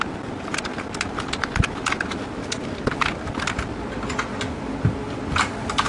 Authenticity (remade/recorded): recorded